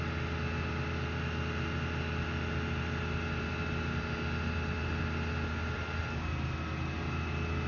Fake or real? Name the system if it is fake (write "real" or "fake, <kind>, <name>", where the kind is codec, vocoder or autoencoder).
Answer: real